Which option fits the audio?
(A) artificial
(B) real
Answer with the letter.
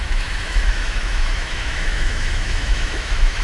A